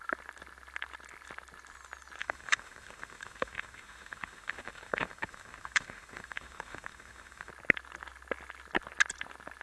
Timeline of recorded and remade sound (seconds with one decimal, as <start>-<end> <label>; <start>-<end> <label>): 0.0-2.2 recorded; 2.2-7.5 remade; 7.5-9.6 recorded